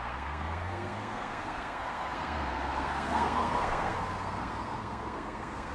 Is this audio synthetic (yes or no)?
yes